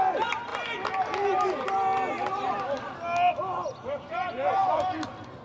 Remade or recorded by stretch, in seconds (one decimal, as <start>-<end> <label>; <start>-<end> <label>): 0.0-5.4 recorded